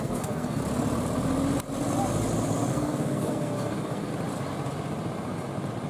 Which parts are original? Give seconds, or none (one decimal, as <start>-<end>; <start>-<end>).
0.6-2.7; 4.1-5.9